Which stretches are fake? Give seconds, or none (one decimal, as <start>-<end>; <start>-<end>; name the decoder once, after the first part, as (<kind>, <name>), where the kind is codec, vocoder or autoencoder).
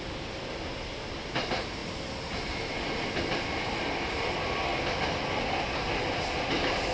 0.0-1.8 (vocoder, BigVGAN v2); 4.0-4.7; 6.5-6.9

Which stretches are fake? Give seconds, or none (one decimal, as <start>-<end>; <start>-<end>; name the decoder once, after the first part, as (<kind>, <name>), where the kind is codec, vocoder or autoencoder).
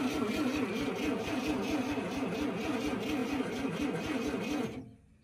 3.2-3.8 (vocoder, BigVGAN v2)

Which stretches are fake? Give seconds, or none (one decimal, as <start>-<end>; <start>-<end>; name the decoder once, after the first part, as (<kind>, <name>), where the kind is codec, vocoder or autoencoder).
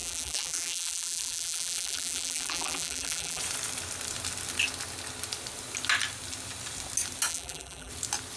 0.0-3.4 (vocoder, BigVGAN v2); 7.3-7.9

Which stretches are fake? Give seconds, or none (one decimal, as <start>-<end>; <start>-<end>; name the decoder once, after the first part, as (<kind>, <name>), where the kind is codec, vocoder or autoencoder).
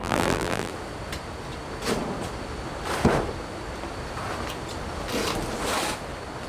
0.0-0.7 (vocoder, BigVGAN v2)